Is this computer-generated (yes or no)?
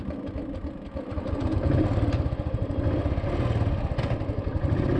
no